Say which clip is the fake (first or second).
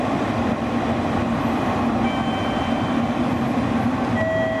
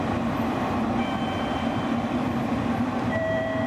second